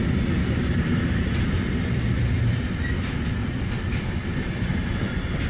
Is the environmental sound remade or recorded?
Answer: recorded